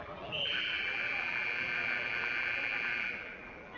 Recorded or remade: remade